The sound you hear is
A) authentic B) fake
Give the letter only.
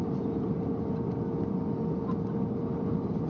A